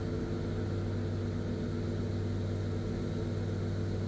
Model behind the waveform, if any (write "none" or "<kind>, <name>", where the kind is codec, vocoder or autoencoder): none